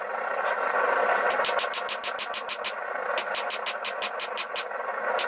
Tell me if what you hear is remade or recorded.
recorded